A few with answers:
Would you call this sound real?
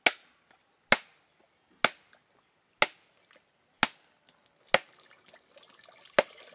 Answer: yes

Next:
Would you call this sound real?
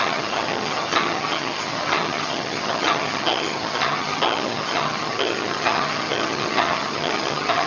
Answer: no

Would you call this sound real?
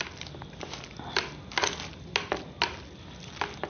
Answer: yes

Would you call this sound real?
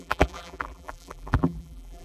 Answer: no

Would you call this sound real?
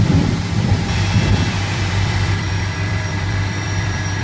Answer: no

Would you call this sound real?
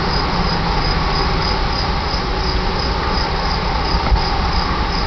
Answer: yes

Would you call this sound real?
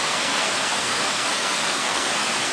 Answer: no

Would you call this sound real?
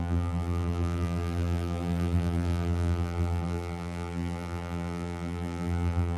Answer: no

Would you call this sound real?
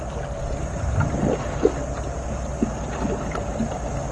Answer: yes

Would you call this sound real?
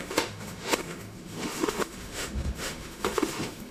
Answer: no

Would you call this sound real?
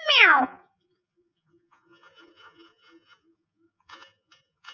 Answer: no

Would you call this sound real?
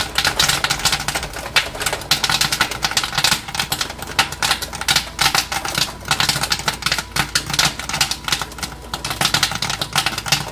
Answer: yes